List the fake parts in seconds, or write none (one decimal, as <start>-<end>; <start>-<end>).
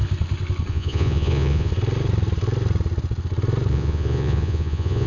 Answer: 0.7-1.7; 3.7-5.1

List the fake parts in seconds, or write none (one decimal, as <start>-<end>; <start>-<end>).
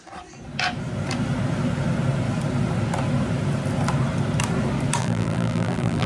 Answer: 5.0-6.1